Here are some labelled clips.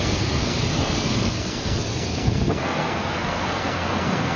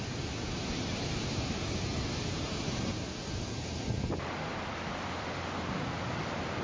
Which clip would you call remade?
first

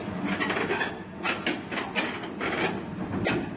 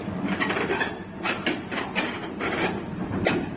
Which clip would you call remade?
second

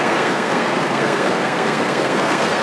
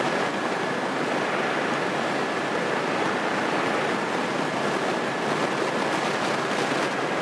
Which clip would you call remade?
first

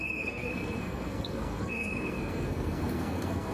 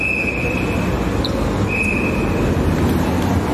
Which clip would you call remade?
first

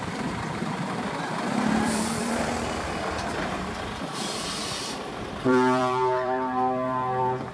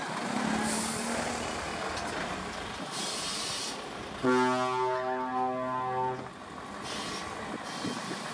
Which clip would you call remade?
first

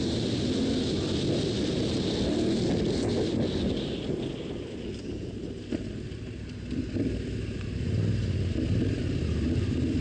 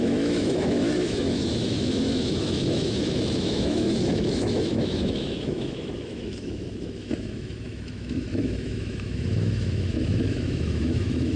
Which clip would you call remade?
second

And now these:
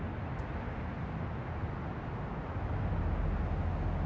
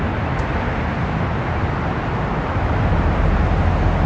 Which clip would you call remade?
second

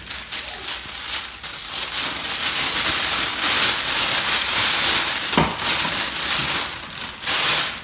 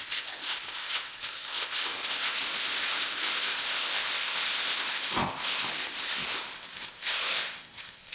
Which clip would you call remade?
second